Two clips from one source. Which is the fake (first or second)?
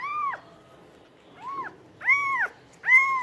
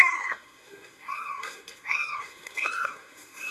second